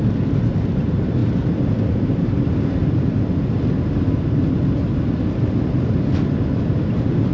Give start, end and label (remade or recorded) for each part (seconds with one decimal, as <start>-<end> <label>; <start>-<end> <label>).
0.0-1.2 recorded; 1.2-2.4 remade; 2.4-7.3 recorded